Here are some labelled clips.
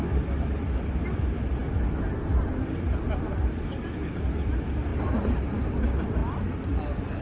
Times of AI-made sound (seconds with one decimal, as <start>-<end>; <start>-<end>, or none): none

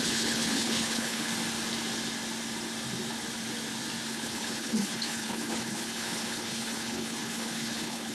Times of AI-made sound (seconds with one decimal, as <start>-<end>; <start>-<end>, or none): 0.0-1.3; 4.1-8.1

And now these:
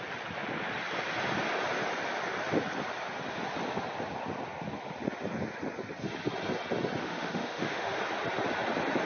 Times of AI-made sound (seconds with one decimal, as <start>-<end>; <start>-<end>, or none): 7.0-8.0

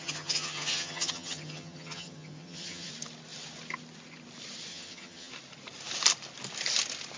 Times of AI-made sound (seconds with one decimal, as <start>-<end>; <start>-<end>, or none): 0.0-2.9; 4.7-5.3

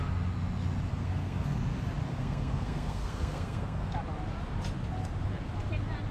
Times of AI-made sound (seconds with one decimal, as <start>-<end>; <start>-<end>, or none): 0.9-1.6; 2.1-3.9

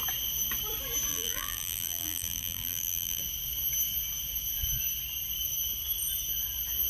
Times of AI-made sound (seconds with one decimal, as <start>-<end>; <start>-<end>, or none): 1.1-3.2